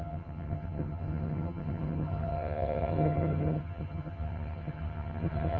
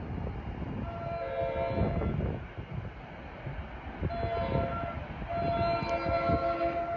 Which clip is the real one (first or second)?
second